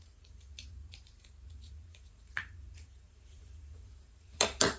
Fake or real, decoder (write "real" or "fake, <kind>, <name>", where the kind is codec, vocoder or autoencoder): fake, vocoder, Vocos